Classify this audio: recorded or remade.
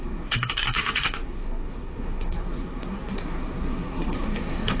remade